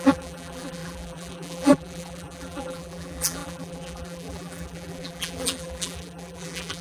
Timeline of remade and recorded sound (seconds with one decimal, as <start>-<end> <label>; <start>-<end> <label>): 0.0-6.8 remade